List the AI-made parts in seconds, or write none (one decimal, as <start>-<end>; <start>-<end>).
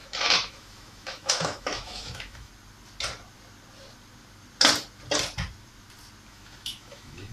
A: 0.0-2.5; 6.3-7.3